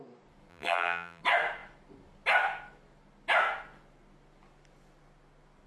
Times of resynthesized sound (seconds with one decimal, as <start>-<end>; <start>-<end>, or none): 0.5-1.2